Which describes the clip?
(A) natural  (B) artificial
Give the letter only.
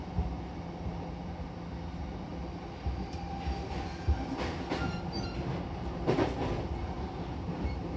A